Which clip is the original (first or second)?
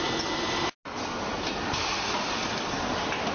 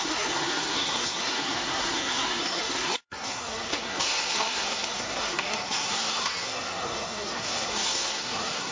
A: first